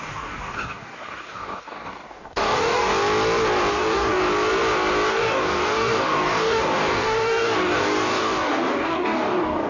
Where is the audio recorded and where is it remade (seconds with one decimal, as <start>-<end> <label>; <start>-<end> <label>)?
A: 0.0-2.9 remade; 2.9-3.7 recorded; 3.7-4.2 remade; 4.2-5.1 recorded; 5.1-9.7 remade